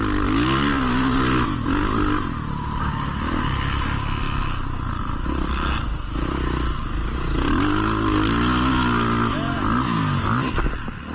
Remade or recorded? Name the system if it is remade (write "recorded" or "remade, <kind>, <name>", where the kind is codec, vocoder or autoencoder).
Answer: recorded